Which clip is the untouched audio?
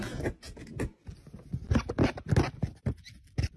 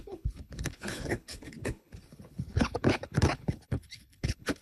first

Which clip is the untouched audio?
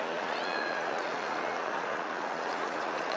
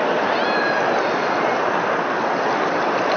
second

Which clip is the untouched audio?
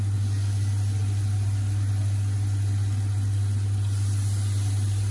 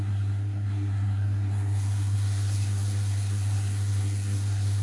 first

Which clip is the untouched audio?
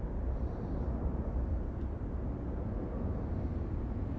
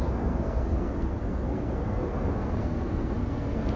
first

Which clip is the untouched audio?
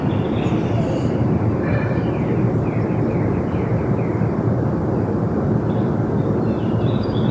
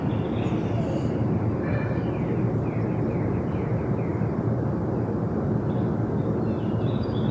second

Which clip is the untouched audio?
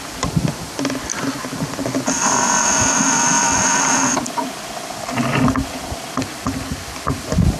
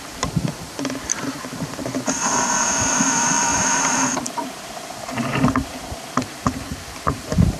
first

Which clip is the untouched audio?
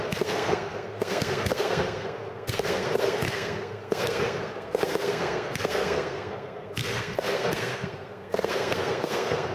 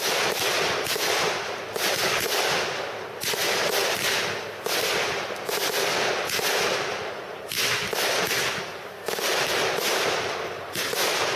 second